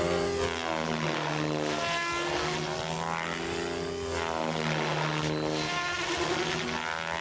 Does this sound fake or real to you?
real